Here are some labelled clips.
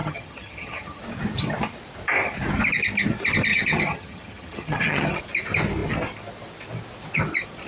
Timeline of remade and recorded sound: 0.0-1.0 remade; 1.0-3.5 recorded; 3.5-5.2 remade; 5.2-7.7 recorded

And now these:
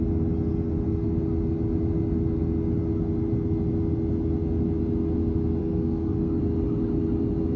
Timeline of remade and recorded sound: 0.0-5.6 recorded; 5.6-6.4 remade; 6.4-7.6 recorded

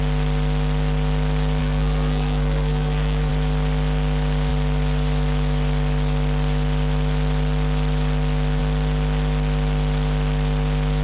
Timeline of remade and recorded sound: 0.0-1.6 recorded; 1.6-3.3 remade; 3.3-11.0 recorded

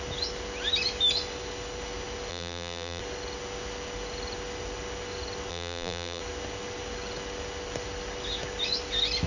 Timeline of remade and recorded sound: 0.0-2.3 recorded; 2.3-3.0 remade; 3.0-5.5 recorded; 5.5-6.2 remade; 6.2-9.3 recorded